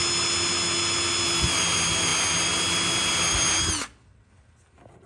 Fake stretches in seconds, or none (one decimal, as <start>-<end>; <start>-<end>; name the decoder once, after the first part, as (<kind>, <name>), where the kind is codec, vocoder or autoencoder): none